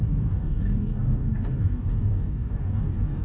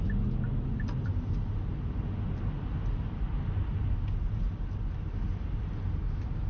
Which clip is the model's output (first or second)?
first